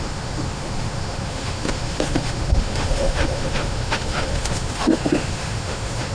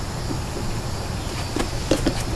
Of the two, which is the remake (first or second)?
first